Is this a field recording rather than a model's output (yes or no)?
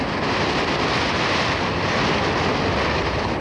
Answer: yes